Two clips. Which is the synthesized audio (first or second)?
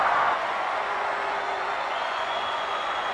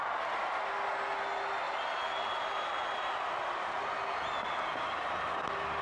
first